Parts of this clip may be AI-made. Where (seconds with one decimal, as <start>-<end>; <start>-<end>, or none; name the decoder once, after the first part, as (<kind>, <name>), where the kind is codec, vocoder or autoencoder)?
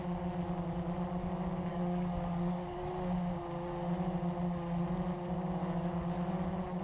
1.7-2.9 (codec, DAC); 5.6-6.3